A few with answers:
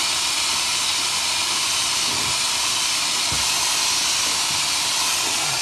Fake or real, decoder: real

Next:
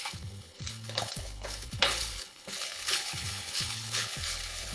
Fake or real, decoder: fake, codec, HILCodec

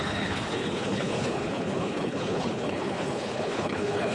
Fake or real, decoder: fake, codec, HILCodec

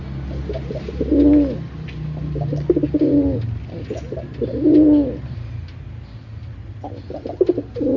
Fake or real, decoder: real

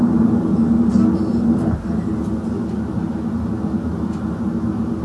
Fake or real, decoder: real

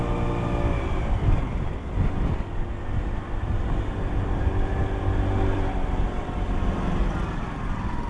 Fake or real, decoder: real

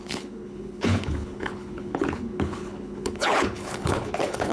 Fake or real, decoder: fake, codec, HILCodec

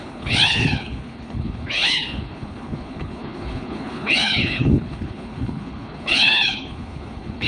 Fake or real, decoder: fake, codec, HILCodec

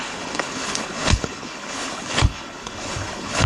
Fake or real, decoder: fake, codec, HILCodec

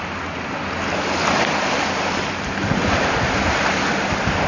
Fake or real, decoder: real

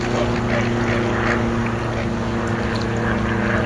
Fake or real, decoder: real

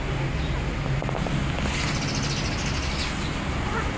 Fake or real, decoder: real